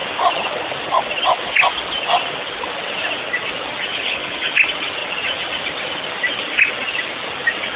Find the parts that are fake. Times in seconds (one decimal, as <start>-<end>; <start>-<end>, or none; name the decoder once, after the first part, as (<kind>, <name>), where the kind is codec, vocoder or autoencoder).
3.9-4.5 (codec, HILCodec)